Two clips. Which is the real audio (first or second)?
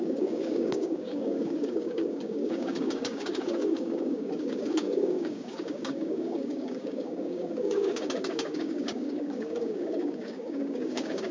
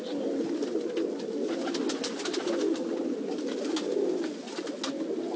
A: second